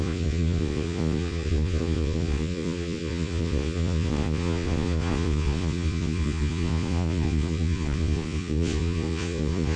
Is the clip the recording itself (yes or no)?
no